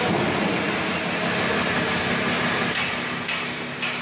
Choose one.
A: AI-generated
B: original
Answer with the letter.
B